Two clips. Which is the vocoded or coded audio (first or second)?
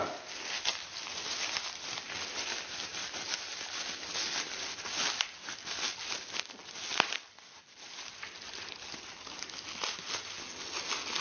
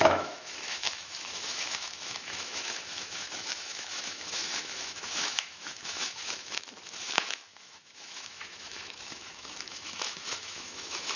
second